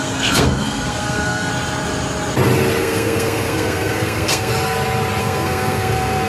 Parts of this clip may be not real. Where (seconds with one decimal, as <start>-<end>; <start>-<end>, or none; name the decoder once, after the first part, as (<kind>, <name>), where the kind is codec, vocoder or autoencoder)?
0.0-1.5 (codec, SNAC); 2.8-4.5; 5.2-6.3